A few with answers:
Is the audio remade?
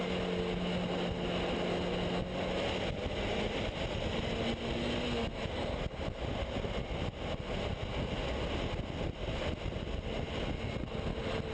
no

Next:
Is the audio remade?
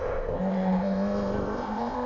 yes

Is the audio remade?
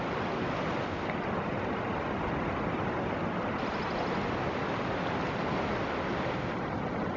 no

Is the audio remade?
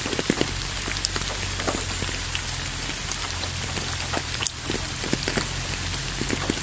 no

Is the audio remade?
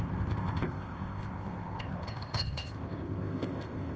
yes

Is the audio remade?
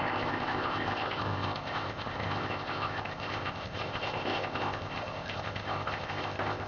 yes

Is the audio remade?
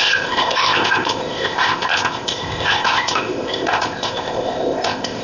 yes